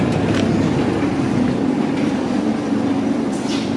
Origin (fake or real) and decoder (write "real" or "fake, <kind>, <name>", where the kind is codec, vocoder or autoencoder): real